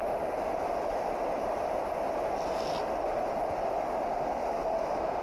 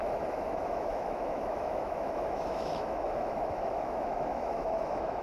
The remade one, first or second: second